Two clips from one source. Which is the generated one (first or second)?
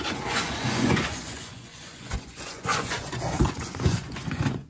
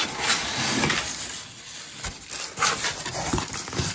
first